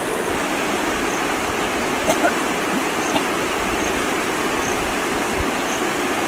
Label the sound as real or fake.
fake